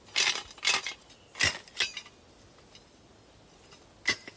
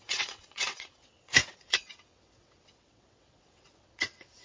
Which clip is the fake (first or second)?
second